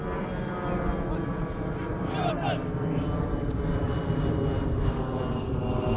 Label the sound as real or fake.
real